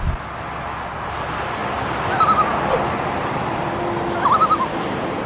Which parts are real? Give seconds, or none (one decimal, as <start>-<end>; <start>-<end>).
0.0-5.3